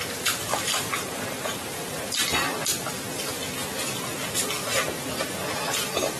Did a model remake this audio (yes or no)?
no